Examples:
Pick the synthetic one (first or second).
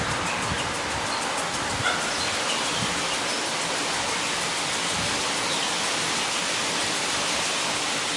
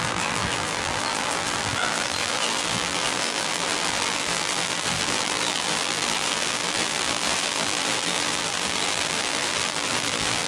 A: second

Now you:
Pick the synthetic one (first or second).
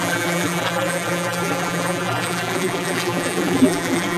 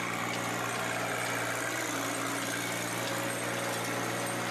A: first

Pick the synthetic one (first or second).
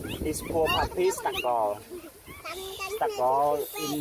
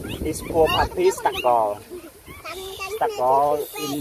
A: second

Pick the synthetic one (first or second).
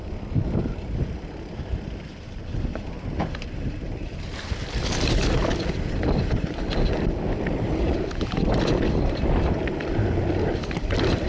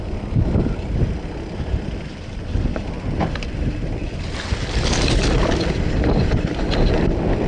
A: first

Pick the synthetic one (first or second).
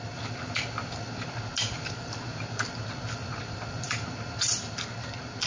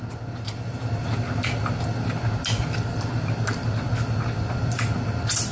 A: first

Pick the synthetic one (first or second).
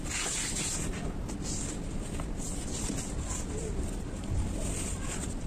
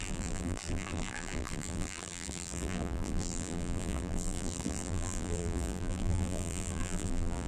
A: second